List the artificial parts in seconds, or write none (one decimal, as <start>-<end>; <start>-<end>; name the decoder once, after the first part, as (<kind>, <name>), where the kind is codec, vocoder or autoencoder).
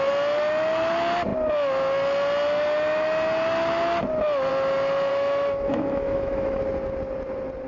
5.1-6.6 (autoencoder, DAC-VAE)